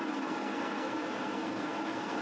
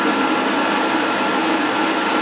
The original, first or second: second